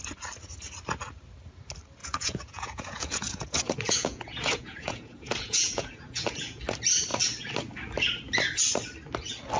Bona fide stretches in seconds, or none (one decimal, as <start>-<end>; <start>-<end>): 0.0-2.0; 6.6-9.6